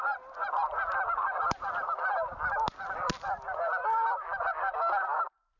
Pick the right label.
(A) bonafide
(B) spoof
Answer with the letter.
A